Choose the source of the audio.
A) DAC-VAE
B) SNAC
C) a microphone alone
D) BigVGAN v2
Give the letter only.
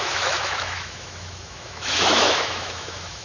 A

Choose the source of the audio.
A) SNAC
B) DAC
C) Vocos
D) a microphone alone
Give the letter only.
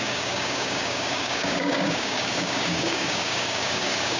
B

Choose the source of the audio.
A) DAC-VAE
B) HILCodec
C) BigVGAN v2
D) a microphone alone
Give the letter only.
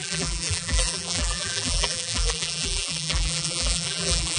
C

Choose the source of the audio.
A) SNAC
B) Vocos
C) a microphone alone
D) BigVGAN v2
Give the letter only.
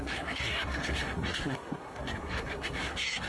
A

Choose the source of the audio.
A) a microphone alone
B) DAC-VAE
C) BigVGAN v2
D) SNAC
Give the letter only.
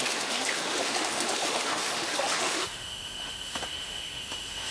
B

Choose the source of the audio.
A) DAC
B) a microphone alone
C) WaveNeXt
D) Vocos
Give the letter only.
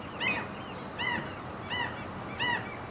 B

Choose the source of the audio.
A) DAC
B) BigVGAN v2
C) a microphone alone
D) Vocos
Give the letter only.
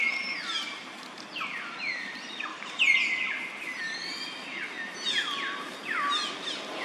C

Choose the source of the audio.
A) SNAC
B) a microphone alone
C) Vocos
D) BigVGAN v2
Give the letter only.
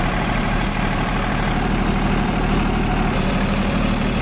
D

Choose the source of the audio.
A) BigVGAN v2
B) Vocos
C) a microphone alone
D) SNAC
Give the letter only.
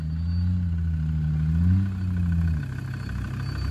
C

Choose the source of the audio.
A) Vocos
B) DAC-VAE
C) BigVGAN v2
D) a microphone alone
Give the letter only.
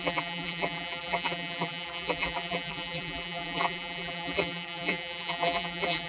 C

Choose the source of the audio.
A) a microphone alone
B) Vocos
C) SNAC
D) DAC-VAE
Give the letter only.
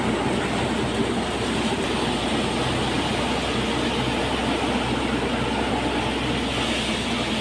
A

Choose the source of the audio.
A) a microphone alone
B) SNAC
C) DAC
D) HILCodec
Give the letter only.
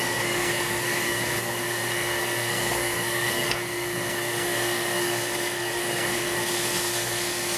B